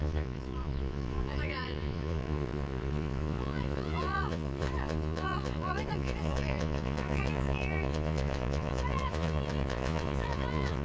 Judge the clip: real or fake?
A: fake